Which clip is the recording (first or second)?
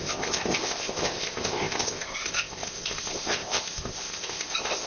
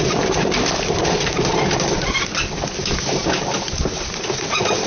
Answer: second